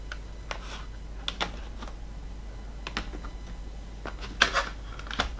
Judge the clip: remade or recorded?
recorded